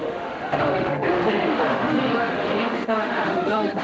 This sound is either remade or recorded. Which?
remade